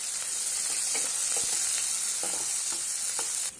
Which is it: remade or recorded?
recorded